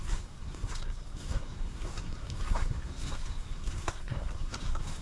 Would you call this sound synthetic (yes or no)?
yes